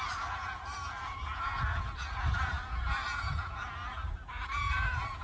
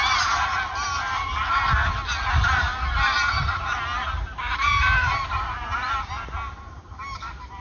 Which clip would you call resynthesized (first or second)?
first